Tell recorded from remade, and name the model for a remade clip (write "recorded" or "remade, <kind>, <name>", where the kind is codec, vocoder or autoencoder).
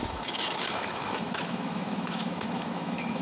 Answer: remade, autoencoder, DAC-VAE